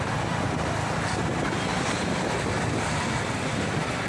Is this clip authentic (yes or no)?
yes